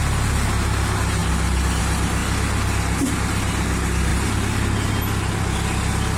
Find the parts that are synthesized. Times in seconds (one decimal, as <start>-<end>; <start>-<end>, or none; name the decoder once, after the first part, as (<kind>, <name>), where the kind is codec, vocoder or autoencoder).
none